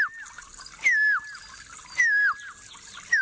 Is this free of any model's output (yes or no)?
yes